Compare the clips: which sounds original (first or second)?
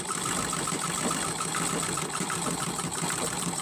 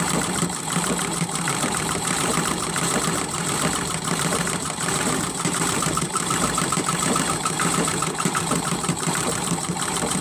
first